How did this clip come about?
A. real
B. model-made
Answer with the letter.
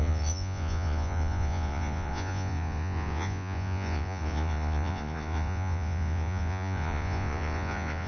B